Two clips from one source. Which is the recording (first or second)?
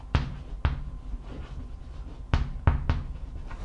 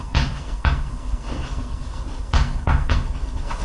first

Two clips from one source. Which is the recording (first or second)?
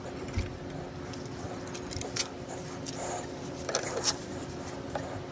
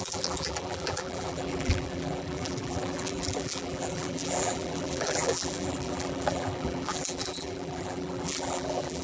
first